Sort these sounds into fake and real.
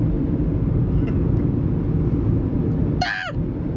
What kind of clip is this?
real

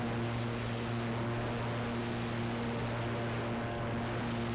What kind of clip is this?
real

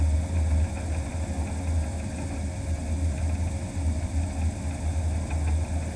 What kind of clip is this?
real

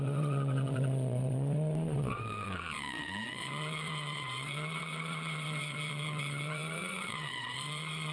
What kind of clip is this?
fake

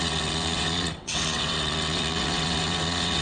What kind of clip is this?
fake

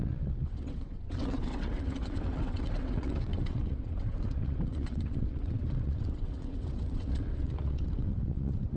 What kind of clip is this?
fake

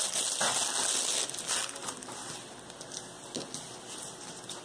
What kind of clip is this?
real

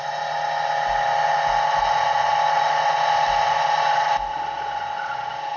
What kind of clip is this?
real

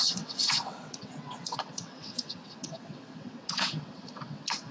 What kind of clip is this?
fake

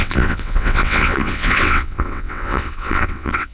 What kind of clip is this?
fake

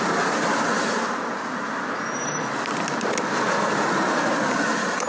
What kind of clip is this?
real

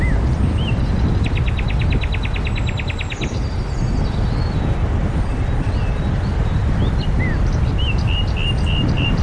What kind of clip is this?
real